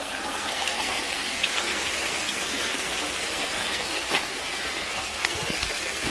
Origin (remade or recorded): remade